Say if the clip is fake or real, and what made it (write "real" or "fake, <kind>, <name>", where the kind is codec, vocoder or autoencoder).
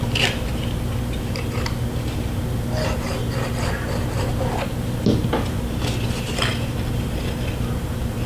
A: real